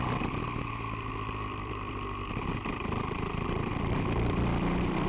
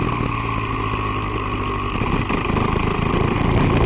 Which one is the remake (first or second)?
first